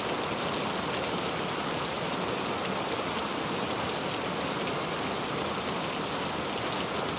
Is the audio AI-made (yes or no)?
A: no